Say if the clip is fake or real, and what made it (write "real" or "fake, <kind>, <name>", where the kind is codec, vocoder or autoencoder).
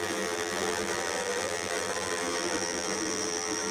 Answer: fake, vocoder, BigVGAN v2